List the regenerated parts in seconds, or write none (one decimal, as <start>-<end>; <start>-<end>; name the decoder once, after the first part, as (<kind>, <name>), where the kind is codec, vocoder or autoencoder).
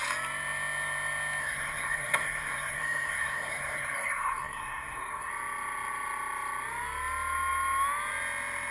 1.4-5.3 (codec, SNAC)